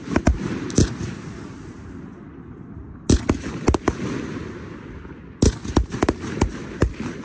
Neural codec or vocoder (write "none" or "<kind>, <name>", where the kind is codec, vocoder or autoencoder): none